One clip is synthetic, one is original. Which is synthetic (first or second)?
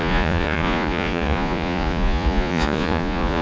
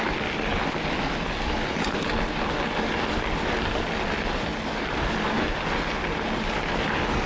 first